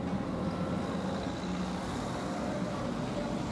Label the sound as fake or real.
real